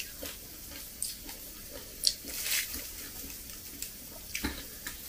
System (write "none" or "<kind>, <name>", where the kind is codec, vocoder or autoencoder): none